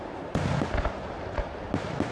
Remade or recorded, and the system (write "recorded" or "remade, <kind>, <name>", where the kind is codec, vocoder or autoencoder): recorded